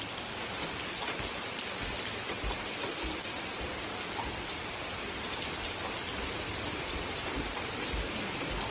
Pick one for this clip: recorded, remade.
remade